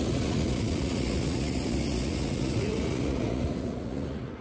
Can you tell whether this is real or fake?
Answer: fake